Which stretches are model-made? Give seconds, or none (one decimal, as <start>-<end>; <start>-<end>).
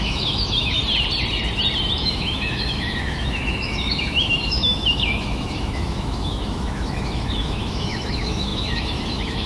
0.0-0.8; 2.0-9.5